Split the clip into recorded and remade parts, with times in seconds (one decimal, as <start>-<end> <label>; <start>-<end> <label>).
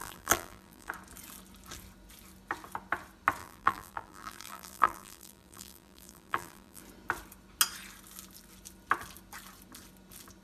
0.0-0.9 remade; 0.9-3.4 recorded; 3.4-6.8 remade; 6.8-10.4 recorded